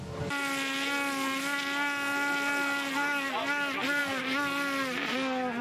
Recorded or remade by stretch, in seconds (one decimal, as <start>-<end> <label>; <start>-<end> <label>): 0.0-5.6 recorded